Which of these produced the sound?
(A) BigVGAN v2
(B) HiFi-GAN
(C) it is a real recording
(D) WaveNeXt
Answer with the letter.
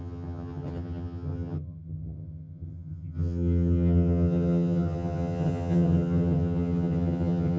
B